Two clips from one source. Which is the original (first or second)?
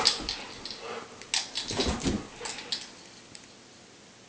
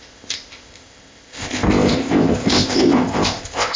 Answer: first